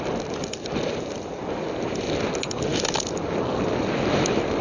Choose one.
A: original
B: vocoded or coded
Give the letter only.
A